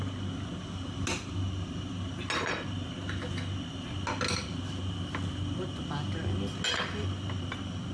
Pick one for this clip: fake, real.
real